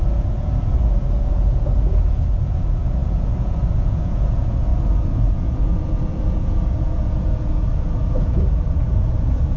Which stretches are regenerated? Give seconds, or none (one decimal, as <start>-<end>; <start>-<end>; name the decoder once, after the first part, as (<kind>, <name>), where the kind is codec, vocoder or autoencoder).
0.0-9.6 (vocoder, Vocos)